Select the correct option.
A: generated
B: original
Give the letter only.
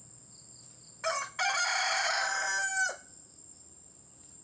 B